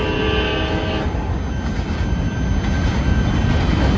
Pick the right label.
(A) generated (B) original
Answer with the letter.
B